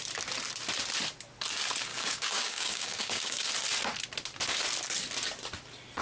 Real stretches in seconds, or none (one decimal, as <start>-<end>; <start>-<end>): 0.0-1.9; 3.5-6.0